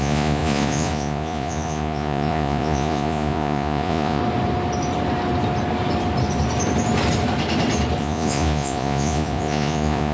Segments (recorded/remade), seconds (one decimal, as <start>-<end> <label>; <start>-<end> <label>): 0.0-4.2 remade; 4.2-8.0 recorded; 8.0-10.1 remade